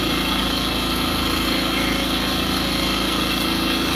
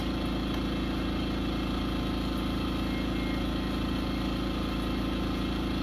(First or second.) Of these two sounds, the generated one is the first